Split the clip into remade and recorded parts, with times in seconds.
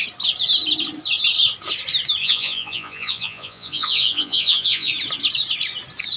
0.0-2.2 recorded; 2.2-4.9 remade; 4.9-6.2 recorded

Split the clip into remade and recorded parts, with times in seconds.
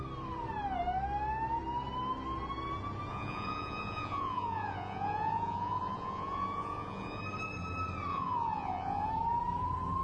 0.0-3.1 recorded; 3.1-7.2 remade; 7.2-8.1 recorded; 8.1-9.1 remade; 9.1-10.0 recorded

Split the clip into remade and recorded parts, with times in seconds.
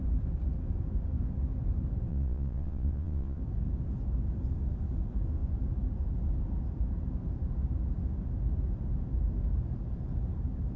0.0-2.1 recorded; 2.1-3.4 remade; 3.4-10.8 recorded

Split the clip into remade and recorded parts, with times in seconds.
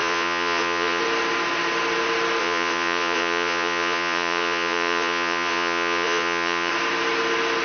0.0-1.0 remade; 1.0-2.4 recorded; 2.4-6.7 remade; 6.7-7.6 recorded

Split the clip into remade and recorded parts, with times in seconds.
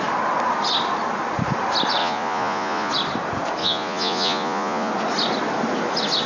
0.0-2.0 recorded; 2.0-2.9 remade; 2.9-3.6 recorded; 3.6-4.9 remade; 4.9-6.3 recorded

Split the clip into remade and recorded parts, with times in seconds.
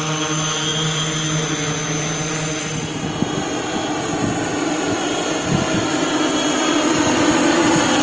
0.0-8.0 recorded